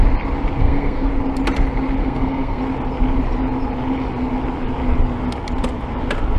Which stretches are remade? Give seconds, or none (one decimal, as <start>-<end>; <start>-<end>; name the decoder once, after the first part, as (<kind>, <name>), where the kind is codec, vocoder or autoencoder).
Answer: 0.6-1.1 (codec, SNAC); 2.0-2.6